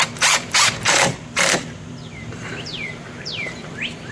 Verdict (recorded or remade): remade